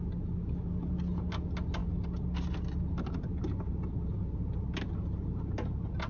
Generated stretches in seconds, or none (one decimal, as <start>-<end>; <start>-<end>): none